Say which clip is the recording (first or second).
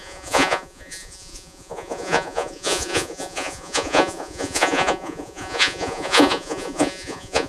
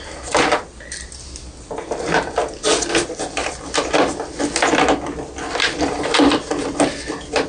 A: second